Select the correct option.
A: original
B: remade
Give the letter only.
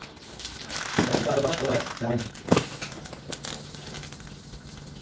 A